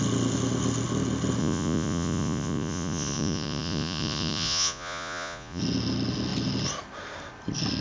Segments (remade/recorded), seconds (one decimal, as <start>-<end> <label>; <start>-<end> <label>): 0.0-1.4 recorded; 1.4-5.6 remade; 5.6-7.8 recorded